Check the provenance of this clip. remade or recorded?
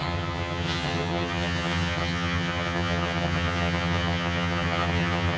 remade